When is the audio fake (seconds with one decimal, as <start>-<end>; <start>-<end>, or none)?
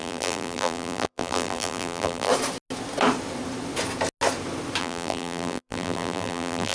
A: 0.0-2.3; 4.8-6.7